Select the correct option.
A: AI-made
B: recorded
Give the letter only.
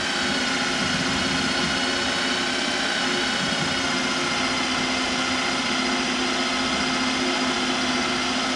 B